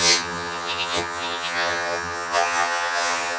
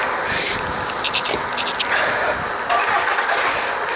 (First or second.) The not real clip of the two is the first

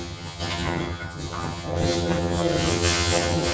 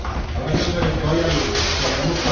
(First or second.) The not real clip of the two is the first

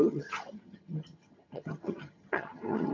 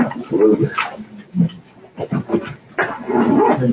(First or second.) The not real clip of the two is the first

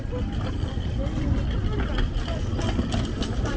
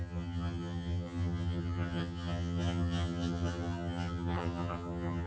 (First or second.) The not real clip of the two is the second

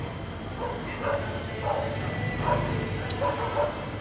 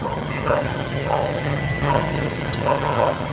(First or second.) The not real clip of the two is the second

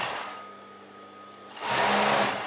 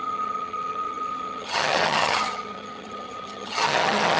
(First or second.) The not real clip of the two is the second